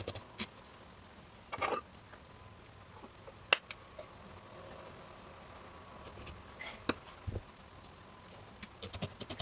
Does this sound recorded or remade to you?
recorded